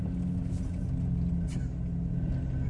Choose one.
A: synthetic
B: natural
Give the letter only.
B